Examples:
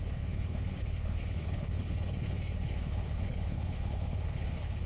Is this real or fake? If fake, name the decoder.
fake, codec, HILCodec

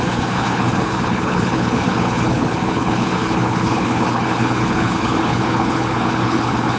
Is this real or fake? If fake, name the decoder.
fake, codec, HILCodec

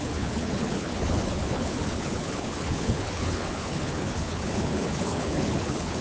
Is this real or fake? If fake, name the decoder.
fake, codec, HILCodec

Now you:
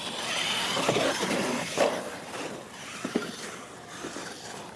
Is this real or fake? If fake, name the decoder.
real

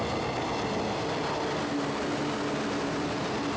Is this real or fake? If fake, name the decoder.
real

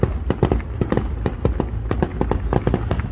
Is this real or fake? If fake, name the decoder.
real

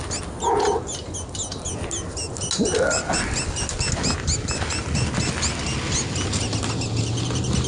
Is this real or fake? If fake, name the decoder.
real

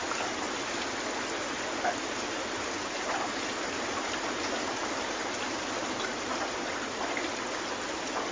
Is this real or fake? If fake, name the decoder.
real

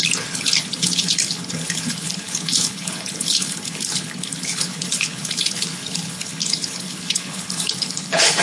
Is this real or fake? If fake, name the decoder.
fake, codec, HILCodec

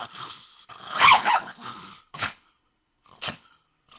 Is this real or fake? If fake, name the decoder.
fake, codec, HILCodec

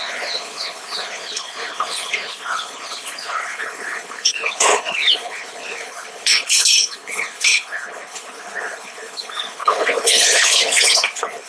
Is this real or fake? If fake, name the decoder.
fake, codec, HILCodec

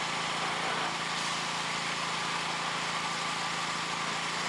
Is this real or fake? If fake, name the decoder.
real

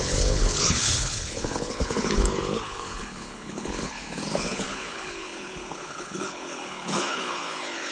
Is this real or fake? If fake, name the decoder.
fake, codec, HILCodec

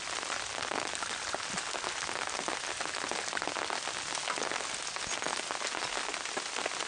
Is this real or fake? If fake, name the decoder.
real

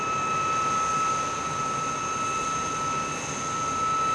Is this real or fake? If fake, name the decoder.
real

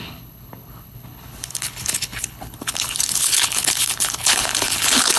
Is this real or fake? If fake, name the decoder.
fake, codec, HILCodec